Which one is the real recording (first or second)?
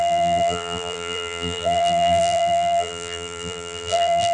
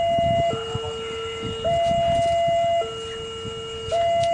second